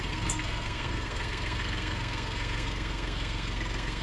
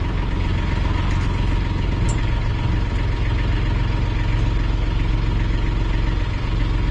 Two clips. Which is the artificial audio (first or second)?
first